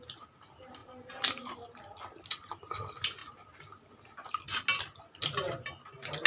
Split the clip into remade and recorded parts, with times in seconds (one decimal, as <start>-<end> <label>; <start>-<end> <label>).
0.0-0.8 recorded; 0.8-1.6 remade; 1.6-6.3 recorded